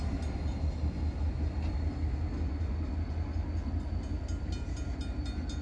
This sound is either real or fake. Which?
real